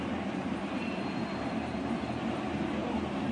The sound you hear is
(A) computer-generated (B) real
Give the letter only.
A